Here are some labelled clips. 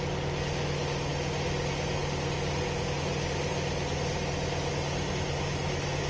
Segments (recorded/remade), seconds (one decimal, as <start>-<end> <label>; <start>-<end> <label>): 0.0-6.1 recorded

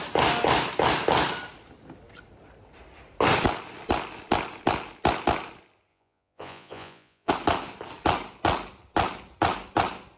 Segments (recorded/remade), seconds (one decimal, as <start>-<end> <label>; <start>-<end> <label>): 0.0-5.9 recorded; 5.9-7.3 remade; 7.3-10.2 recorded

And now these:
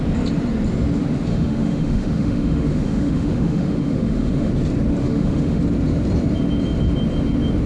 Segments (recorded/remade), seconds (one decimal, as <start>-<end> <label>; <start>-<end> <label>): 0.0-1.3 recorded; 1.3-4.5 remade; 4.5-5.0 recorded; 5.0-5.6 remade; 5.6-7.7 recorded